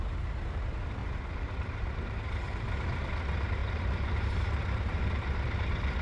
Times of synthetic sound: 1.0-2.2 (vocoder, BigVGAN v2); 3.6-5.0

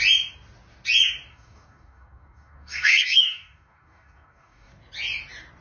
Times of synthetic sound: 1.3-4.7 (codec, DAC)

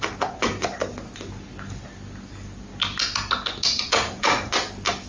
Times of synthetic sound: 3.7-4.5 (vocoder, Vocos)

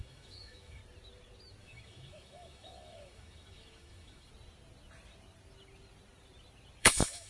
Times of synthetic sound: 0.0-0.8 (autoencoder, DAC-VAE); 1.6-4.3; 6.8-7.3